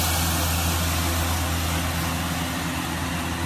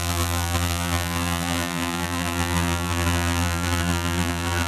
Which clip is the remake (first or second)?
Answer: second